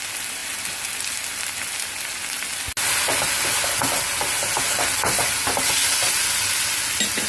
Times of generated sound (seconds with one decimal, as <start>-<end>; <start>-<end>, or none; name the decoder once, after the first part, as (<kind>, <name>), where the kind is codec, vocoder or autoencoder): none

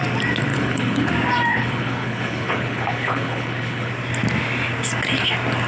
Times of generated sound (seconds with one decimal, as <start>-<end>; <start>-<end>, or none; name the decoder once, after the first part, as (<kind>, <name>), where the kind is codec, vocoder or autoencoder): 0.5-1.1 (codec, HILCodec); 1.5-3.9

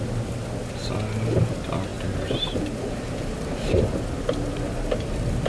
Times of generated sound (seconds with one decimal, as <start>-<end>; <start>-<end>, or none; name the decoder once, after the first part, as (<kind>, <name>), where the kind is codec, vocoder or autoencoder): none